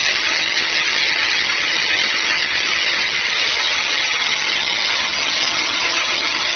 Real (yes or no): no